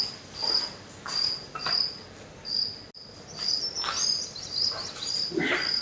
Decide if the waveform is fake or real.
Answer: real